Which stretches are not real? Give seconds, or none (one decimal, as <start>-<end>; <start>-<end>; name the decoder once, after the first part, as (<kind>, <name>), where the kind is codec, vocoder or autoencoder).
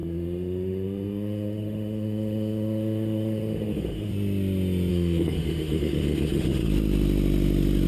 0.0-4.1 (autoencoder, DAC-VAE); 4.9-6.7